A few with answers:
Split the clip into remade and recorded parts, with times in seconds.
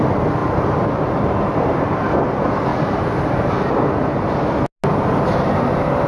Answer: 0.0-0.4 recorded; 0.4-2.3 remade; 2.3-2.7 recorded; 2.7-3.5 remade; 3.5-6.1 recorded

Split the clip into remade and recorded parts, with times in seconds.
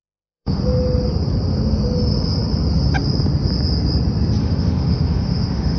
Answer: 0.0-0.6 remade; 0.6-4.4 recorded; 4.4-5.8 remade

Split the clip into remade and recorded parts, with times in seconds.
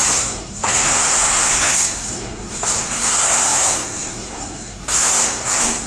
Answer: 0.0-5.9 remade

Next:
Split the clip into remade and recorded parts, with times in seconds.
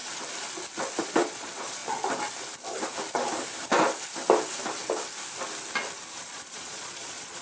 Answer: 0.0-1.0 recorded; 1.0-1.8 remade; 1.8-6.2 recorded; 6.2-7.4 remade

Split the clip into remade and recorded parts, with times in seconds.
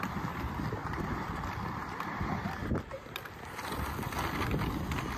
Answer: 0.0-0.8 recorded; 0.8-3.9 remade; 3.9-5.2 recorded